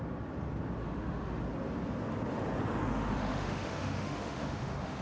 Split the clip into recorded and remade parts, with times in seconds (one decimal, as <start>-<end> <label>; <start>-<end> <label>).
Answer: 0.0-0.8 recorded; 0.8-1.4 remade; 1.4-2.9 recorded; 2.9-5.0 remade